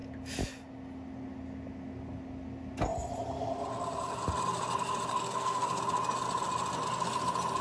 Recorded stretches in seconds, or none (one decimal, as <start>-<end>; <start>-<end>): 0.0-5.1; 5.8-7.6